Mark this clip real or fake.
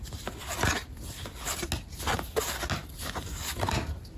real